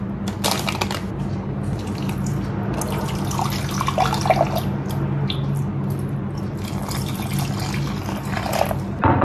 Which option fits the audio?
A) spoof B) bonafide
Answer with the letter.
B